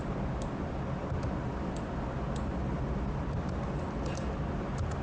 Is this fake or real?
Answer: real